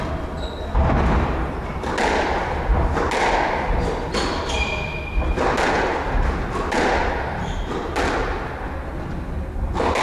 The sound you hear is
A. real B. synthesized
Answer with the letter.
A